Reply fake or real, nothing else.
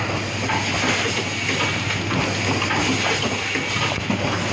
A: real